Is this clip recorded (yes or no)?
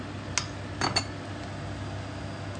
yes